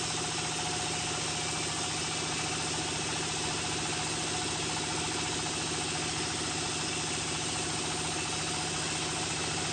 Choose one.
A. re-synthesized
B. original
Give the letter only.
B